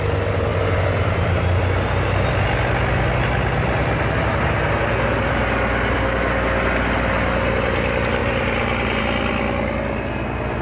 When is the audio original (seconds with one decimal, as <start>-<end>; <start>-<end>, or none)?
0.0-8.2; 9.0-10.6

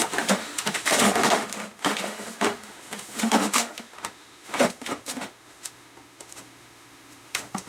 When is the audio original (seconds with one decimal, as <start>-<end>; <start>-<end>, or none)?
none

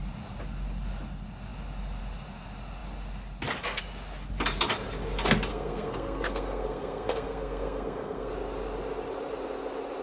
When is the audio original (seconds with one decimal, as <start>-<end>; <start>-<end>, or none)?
0.0-5.5; 8.3-10.0